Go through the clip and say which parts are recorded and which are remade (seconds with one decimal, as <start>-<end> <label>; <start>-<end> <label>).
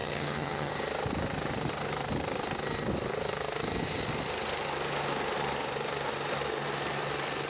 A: 0.0-0.7 remade; 0.7-7.5 recorded